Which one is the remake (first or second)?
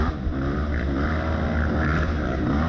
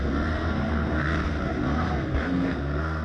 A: second